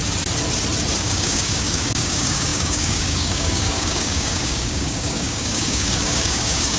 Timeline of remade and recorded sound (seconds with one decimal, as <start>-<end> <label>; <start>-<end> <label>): 0.0-1.0 recorded; 1.0-6.8 remade